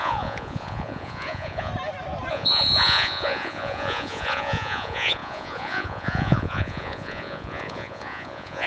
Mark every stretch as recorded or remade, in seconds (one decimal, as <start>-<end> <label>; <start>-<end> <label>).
0.0-1.7 remade; 1.7-2.3 recorded; 2.3-8.7 remade